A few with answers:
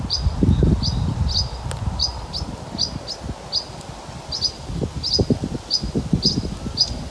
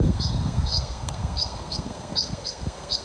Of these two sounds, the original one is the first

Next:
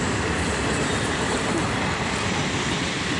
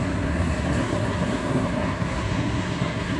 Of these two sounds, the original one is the first